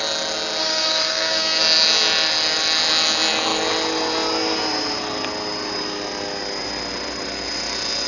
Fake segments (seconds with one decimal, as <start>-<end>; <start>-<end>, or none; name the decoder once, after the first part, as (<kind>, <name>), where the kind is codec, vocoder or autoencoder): 0.6-1.6 (codec, DAC)